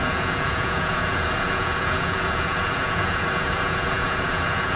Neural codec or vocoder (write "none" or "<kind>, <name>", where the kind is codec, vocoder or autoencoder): vocoder, Vocos